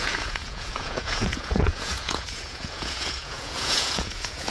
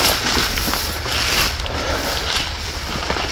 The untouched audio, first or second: second